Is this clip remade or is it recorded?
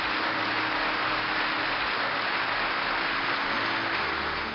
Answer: recorded